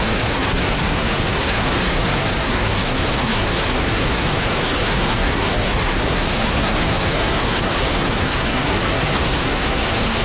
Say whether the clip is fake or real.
fake